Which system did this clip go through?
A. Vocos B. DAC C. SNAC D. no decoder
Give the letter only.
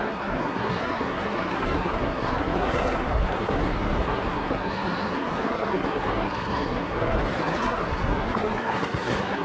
C